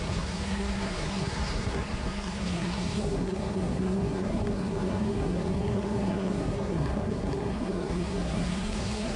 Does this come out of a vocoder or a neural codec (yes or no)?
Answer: yes